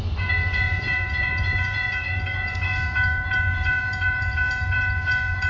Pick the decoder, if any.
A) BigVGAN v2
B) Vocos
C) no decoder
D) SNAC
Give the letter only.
B